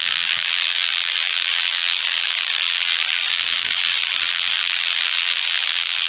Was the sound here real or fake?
fake